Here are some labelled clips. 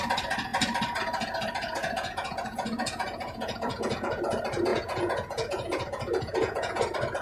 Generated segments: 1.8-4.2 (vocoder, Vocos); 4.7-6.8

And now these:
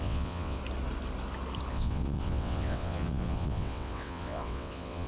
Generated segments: 0.0-0.6 (vocoder, WaveNeXt); 1.7-5.1

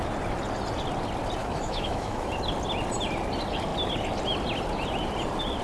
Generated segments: 1.4-2.3 (autoencoder, DAC-VAE)

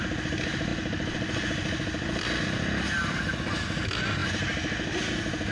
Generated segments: none

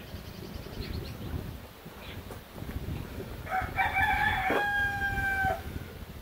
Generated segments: 4.4-5.0 (codec, DAC)